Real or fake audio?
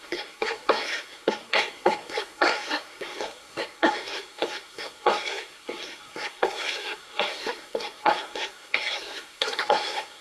fake